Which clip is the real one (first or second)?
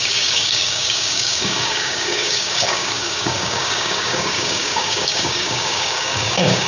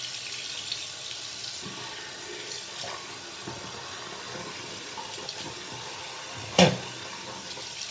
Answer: second